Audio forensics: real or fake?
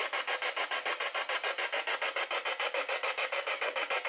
real